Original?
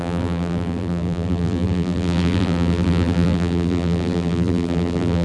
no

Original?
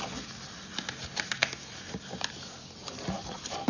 yes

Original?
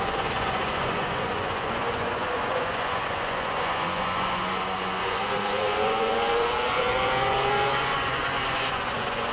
no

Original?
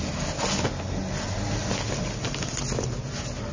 yes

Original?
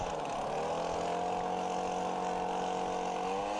yes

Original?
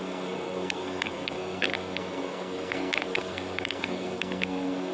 no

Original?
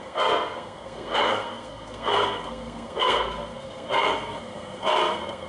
no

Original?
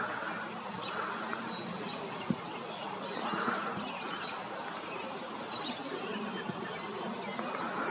yes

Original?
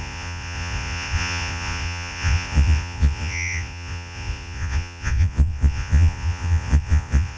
no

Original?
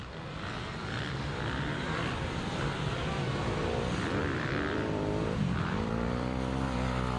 no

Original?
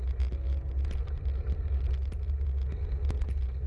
yes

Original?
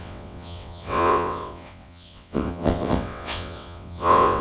no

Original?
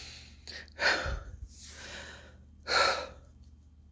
yes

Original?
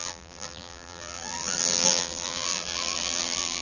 no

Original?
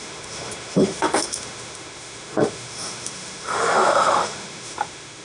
no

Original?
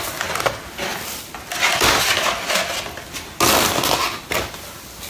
yes